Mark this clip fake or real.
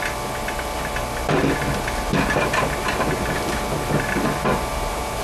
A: real